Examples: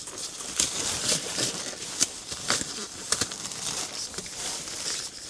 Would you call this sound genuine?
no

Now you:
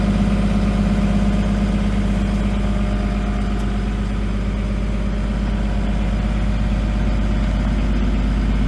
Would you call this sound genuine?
yes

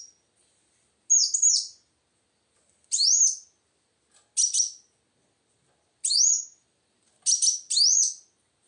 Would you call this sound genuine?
yes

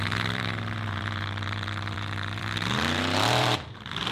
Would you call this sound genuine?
no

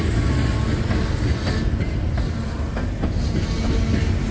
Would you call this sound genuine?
yes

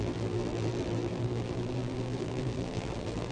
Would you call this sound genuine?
no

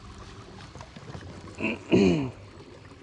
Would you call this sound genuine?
yes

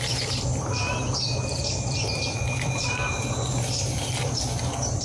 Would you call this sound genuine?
no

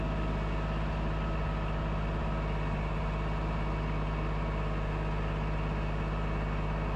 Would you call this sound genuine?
yes